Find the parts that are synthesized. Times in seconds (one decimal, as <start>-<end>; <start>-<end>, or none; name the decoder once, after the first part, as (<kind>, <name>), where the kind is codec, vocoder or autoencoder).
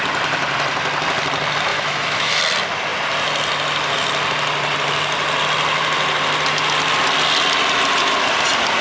1.7-2.4 (autoencoder, DAC-VAE)